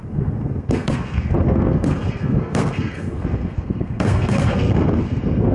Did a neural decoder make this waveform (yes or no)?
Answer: yes